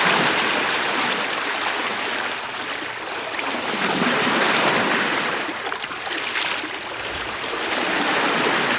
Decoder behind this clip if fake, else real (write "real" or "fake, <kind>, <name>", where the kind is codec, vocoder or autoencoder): real